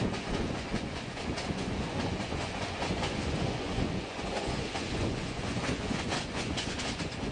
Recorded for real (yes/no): no